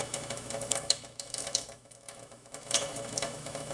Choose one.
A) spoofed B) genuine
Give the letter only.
A